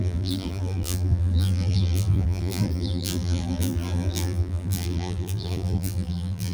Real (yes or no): no